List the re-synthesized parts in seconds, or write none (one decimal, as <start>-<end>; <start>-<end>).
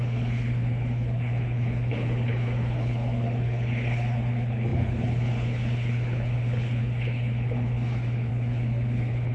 0.0-9.3